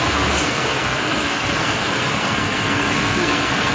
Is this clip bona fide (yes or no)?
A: no